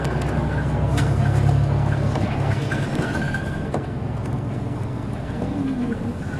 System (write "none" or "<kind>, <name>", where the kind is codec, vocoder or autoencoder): codec, SNAC